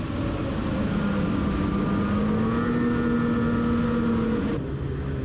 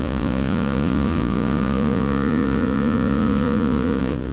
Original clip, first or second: first